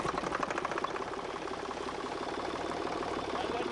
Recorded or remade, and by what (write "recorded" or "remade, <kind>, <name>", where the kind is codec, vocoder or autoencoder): recorded